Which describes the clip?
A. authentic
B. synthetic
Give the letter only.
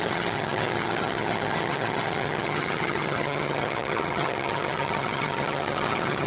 B